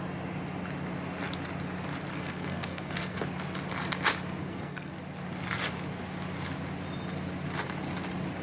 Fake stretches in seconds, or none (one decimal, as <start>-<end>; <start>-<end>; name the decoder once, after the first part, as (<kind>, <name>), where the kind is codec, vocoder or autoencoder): 2.1-3.2 (codec, SNAC); 4.4-4.9

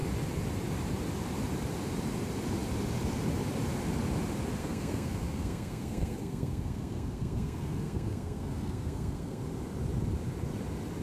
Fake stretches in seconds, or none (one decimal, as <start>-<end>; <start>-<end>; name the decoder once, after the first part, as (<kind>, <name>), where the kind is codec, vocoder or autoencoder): 4.6-9.4 (codec, SNAC)